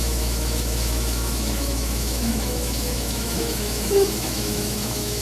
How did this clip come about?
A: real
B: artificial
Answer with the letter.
B